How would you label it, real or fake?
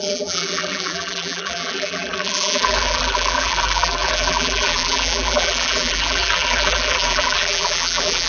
fake